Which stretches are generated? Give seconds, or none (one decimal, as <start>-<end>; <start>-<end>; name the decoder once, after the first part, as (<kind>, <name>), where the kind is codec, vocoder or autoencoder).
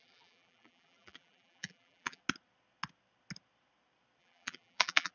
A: 0.0-2.2 (vocoder, BigVGAN v2); 4.2-5.1